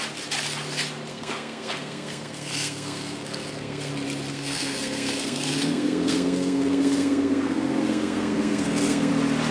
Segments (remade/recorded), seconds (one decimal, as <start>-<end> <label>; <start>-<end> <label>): 0.0-1.1 recorded; 1.1-3.9 remade; 3.9-4.3 recorded; 4.3-9.1 remade; 9.1-9.5 recorded